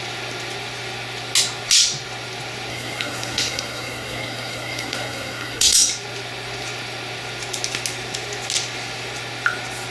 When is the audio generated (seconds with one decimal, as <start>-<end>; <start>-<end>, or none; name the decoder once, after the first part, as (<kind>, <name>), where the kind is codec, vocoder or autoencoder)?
2.7-5.9 (codec, SNAC)